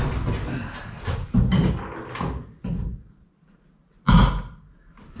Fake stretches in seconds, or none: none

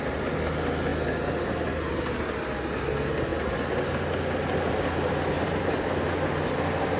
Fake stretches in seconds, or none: none

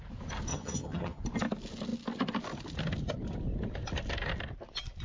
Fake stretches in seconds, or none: 0.5-1.2 (vocoder, HiFi-GAN)

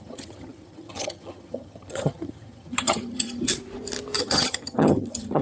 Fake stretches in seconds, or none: 0.0-3.5 (vocoder, HiFi-GAN); 4.2-5.4

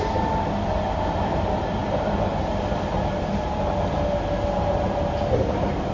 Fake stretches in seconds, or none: none

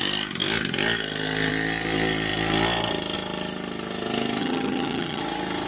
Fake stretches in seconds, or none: 4.4-5.2 (vocoder, HiFi-GAN)

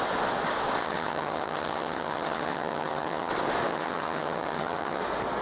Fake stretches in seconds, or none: 0.8-3.3 (vocoder, HiFi-GAN); 3.7-5.0